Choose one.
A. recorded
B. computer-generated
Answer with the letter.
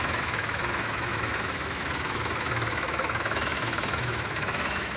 B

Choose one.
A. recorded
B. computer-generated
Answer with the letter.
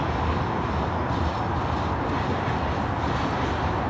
A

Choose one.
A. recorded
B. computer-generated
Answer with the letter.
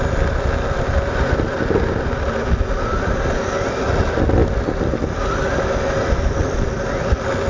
A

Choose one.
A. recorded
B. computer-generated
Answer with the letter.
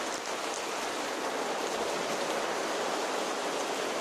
A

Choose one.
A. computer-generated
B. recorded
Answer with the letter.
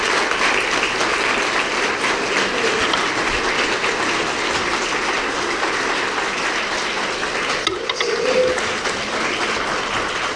B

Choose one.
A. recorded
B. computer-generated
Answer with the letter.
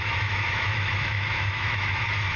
B